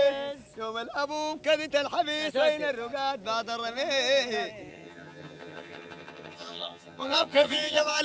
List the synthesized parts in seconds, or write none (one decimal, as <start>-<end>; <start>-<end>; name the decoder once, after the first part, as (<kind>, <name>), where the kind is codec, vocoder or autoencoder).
4.7-8.0 (vocoder, HiFi-GAN)